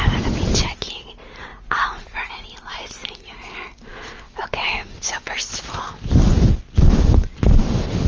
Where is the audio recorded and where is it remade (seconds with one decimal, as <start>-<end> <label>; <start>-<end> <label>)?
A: 0.0-1.5 recorded; 1.5-2.3 remade; 2.3-8.1 recorded